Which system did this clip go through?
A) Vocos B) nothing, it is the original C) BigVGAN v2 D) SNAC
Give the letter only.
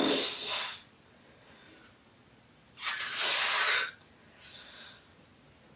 B